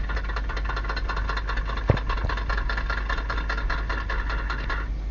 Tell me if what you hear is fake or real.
real